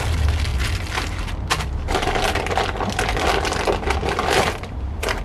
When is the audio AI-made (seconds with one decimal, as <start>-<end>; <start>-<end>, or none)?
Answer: none

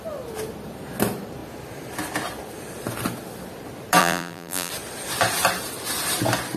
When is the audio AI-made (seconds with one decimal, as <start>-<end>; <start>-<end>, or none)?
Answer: 4.0-4.7

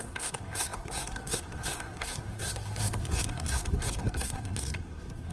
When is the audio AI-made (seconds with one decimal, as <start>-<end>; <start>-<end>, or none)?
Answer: 0.0-5.3

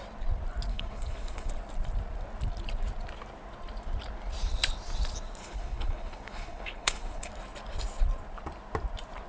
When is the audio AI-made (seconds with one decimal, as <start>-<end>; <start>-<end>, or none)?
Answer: 0.7-1.5; 5.4-7.3